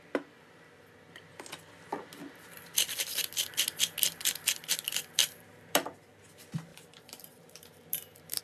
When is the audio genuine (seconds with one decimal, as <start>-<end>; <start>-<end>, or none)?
0.0-5.2; 6.2-6.7